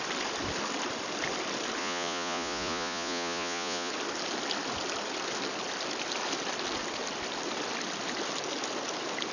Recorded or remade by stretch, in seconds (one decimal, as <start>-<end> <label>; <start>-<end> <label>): 0.0-1.8 recorded; 1.8-3.9 remade; 3.9-9.3 recorded